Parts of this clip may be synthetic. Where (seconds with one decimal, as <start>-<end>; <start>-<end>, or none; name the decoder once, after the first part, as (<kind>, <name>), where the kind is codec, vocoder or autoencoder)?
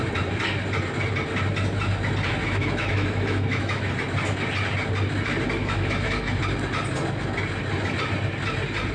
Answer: 2.4-3.9 (autoencoder, DAC-VAE); 5.6-6.4